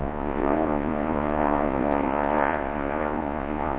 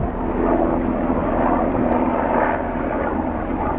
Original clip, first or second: second